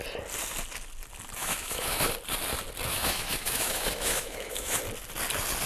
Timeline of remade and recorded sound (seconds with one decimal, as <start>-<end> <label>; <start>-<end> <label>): 0.0-1.4 recorded; 1.4-2.1 remade; 2.1-2.9 recorded; 2.9-4.8 remade; 4.8-5.7 recorded